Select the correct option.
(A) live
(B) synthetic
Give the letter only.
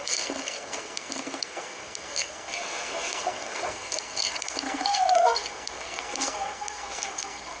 B